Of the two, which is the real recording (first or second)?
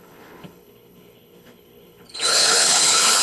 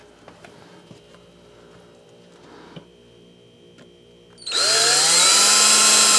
second